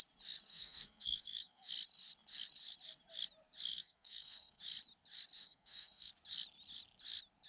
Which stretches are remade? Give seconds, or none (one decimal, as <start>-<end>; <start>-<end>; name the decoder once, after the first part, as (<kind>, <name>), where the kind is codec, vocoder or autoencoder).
0.5-1.7 (codec, SNAC); 3.7-4.6; 5.4-6.1